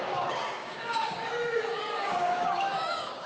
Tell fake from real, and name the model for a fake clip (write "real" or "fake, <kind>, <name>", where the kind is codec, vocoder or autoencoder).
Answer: fake, codec, DAC